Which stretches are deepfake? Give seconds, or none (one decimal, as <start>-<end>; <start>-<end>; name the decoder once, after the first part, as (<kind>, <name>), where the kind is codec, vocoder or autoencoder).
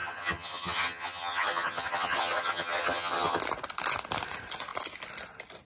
0.0-3.4 (vocoder, HiFi-GAN)